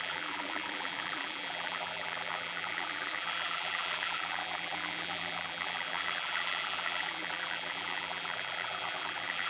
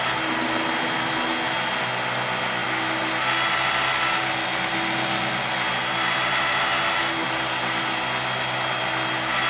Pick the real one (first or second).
second